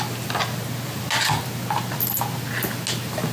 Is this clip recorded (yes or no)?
yes